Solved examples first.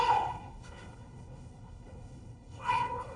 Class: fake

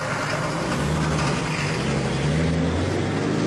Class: real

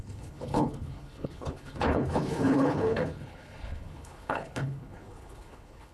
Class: fake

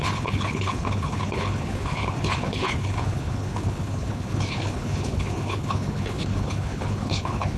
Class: fake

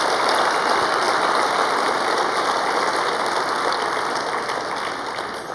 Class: real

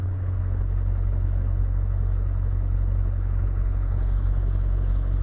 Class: fake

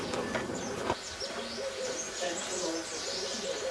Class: real